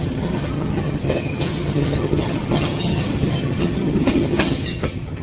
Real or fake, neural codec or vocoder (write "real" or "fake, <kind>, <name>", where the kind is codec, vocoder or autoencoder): fake, vocoder, HiFi-GAN